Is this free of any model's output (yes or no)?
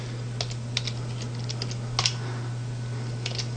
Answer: yes